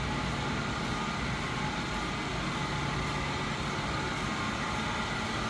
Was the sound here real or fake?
real